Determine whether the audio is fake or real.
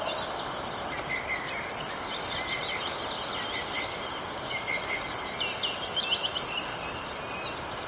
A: real